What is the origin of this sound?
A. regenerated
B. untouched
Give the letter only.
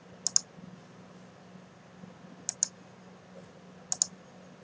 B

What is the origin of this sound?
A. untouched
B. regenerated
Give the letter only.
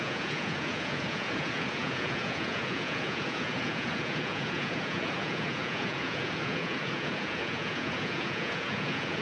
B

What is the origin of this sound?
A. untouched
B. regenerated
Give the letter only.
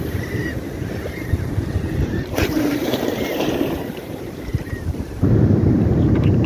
B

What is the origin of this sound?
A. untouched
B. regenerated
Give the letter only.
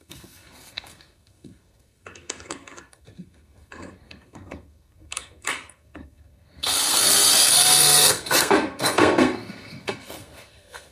B